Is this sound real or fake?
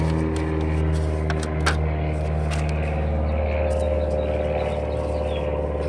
real